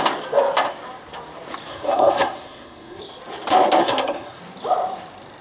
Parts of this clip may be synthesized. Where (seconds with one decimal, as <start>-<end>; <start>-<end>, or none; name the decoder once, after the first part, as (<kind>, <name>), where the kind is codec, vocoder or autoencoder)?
1.7-3.0 (codec, SNAC); 3.8-4.4